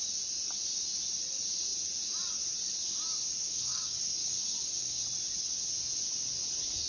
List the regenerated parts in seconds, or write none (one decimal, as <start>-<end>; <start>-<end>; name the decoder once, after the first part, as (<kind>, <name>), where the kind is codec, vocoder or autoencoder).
3.4-5.0 (codec, DAC)